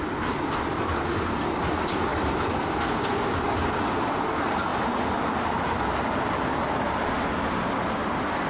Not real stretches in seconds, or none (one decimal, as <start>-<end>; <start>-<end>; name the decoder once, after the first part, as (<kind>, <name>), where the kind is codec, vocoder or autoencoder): 2.1-2.6 (vocoder, BigVGAN v2)